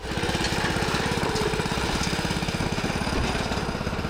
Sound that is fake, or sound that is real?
real